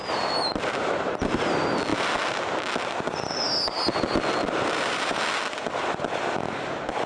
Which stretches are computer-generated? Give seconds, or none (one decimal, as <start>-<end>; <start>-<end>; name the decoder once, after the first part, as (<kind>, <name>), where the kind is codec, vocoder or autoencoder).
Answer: 0.0-1.4 (vocoder, BigVGAN v2); 4.4-5.2